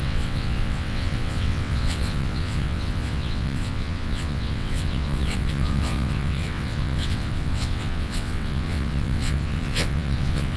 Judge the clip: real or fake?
fake